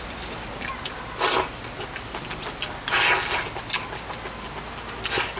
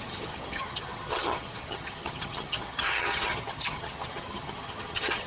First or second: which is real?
first